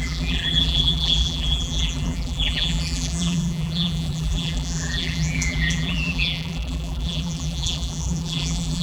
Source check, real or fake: fake